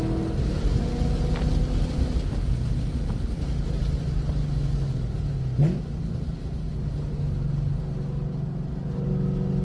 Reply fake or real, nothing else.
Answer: real